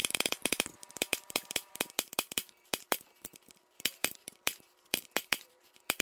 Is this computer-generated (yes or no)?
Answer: yes